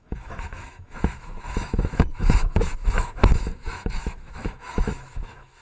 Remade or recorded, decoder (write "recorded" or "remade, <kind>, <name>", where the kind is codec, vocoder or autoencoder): remade, autoencoder, DAC-VAE